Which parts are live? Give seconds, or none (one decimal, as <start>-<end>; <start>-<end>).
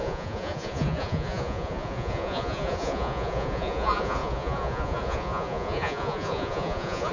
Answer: none